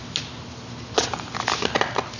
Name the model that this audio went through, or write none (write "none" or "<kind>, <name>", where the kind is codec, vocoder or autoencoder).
none